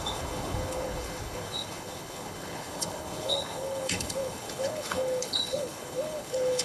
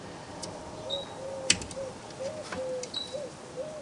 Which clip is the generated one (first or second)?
first